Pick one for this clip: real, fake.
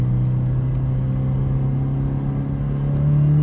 real